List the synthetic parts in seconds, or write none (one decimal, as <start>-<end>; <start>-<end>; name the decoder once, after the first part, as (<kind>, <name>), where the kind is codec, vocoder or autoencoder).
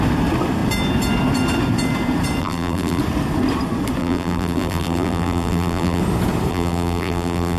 2.4-3.0 (vocoder, BigVGAN v2); 4.0-6.0; 6.5-7.6